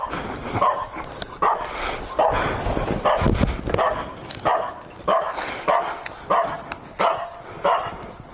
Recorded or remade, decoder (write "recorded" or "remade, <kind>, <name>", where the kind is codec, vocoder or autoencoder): recorded